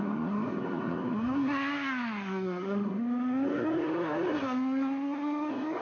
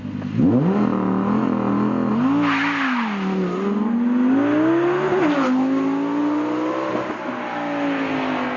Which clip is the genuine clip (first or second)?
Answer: second